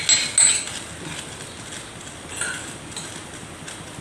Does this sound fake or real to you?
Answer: real